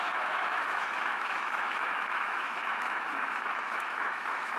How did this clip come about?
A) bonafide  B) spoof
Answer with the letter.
B